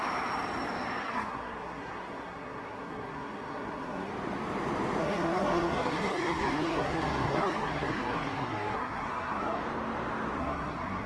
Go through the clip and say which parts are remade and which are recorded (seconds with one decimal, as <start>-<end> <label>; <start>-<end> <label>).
0.0-1.0 recorded; 1.0-4.1 remade; 4.1-5.0 recorded; 5.0-9.6 remade; 9.6-10.4 recorded; 10.4-11.1 remade